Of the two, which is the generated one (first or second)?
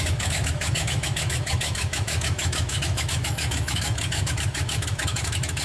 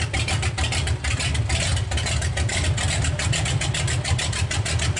first